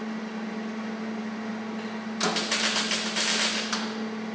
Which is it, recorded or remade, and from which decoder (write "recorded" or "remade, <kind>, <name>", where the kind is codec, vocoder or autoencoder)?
recorded